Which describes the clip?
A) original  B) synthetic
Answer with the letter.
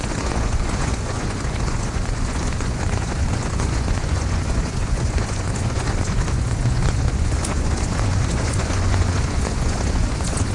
B